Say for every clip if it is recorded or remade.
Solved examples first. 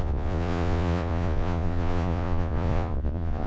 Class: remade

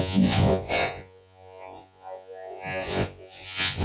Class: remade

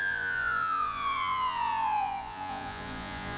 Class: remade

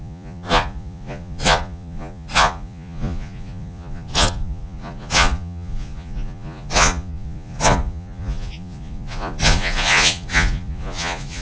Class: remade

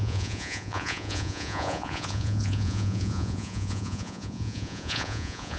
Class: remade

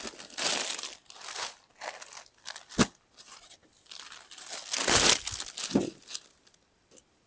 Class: recorded